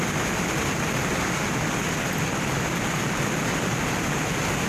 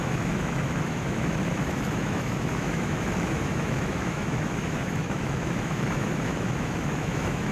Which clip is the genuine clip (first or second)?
first